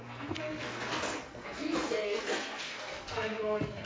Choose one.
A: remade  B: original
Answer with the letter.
A